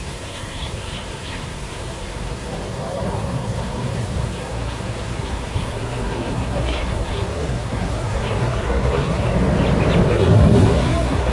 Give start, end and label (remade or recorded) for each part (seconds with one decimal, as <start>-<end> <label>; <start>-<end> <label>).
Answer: 0.0-9.3 remade; 9.3-10.1 recorded; 10.1-11.3 remade